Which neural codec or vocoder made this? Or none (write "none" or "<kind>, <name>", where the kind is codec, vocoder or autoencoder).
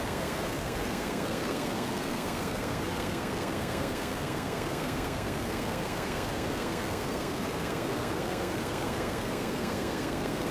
codec, SNAC